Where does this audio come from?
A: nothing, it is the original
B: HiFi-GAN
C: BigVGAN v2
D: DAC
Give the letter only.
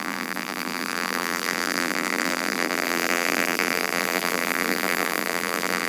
C